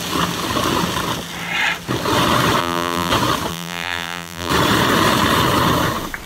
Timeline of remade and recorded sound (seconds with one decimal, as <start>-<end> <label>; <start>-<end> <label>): 0.0-2.6 recorded; 2.6-3.1 remade; 3.1-3.5 recorded; 3.5-4.5 remade; 4.5-6.3 recorded